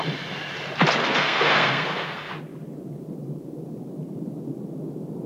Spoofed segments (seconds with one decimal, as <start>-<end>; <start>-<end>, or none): 1.0-2.3